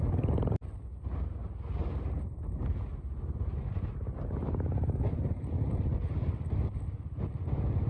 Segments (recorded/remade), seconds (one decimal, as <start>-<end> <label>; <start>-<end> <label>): 0.0-1.8 recorded; 1.8-5.5 remade; 5.5-7.9 recorded